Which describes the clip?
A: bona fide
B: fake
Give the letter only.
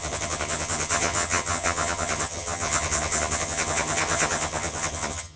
B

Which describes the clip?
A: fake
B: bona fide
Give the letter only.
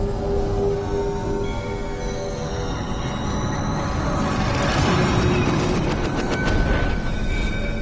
B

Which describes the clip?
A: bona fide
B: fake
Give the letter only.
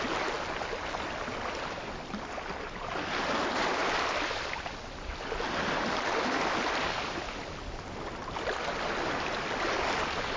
A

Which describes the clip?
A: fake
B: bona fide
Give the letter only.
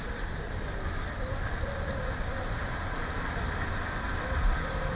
B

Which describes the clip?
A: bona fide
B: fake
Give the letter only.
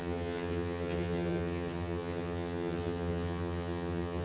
B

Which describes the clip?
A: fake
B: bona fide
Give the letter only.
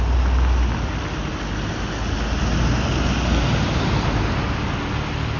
B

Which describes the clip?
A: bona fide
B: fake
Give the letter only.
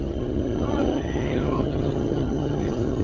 B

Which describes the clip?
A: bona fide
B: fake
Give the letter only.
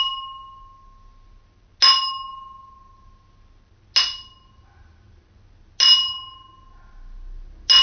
A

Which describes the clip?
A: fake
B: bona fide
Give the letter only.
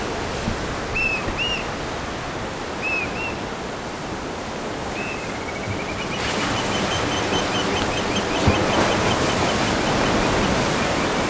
B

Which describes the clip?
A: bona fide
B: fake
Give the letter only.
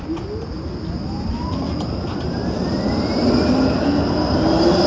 A